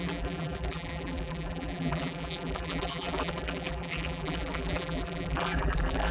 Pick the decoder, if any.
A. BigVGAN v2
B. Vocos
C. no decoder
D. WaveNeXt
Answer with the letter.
A